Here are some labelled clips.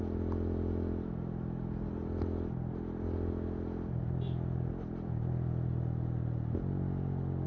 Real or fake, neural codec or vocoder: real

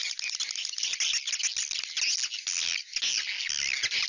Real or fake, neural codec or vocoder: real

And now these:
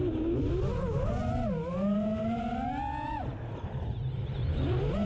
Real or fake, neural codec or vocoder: real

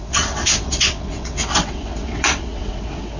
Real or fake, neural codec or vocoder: fake, vocoder, WaveNeXt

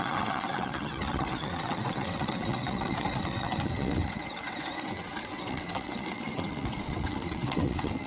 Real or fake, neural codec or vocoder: fake, vocoder, WaveNeXt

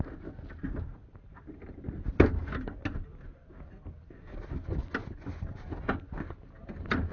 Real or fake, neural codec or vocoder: real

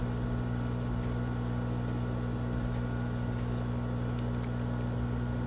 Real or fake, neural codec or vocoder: real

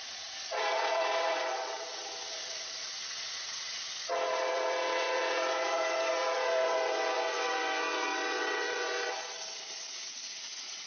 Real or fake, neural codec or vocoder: fake, vocoder, WaveNeXt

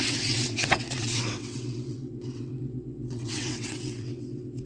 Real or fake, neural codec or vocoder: fake, vocoder, WaveNeXt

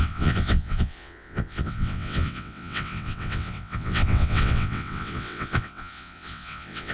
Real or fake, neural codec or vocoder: fake, vocoder, WaveNeXt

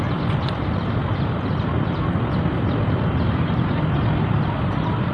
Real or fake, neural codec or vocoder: real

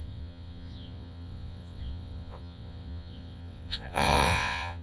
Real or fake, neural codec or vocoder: fake, vocoder, WaveNeXt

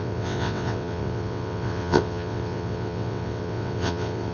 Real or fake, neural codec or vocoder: fake, vocoder, WaveNeXt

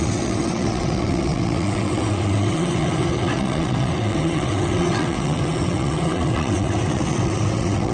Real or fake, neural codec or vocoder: fake, vocoder, WaveNeXt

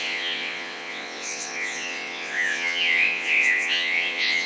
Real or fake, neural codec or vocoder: fake, vocoder, WaveNeXt